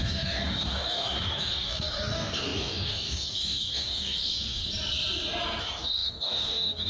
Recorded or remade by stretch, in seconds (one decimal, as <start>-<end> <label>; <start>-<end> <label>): 0.0-4.6 remade; 4.6-5.6 recorded; 5.6-6.9 remade